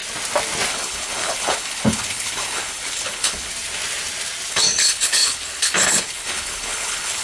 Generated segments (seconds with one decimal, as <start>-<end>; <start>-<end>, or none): 0.7-3.5; 4.5-7.2